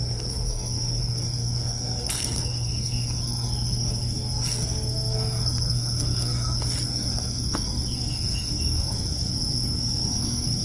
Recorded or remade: remade